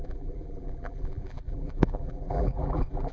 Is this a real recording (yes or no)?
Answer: no